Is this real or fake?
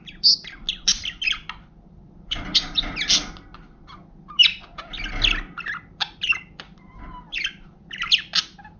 real